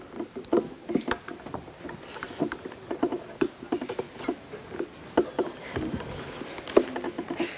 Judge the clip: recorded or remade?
recorded